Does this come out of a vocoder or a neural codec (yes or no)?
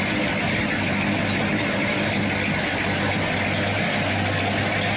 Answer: no